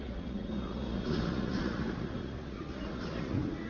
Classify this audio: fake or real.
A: fake